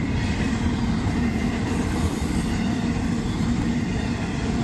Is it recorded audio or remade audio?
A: remade